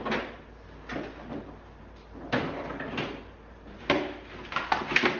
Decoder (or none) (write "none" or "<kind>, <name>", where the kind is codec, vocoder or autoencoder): none